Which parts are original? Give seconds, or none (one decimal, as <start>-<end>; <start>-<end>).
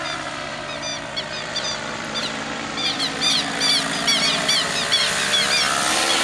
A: none